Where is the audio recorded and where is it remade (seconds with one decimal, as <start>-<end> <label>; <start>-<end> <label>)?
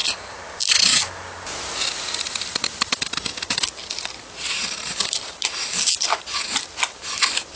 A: 0.0-7.6 recorded